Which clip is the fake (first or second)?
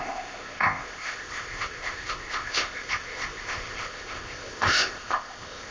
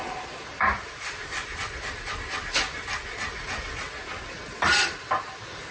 first